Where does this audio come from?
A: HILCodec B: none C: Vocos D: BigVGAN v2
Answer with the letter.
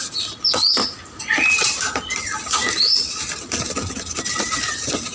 B